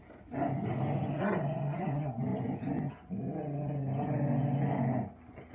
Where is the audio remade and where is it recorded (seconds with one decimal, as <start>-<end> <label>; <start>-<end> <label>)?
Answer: 0.0-5.5 recorded